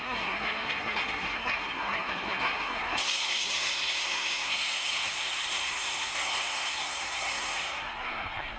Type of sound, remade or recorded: remade